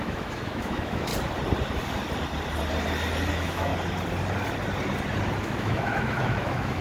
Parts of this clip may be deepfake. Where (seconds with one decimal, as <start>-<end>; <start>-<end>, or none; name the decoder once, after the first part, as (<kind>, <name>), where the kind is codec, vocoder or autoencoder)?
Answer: 0.0-1.1 (autoencoder, DAC-VAE); 3.3-3.7; 5.4-6.8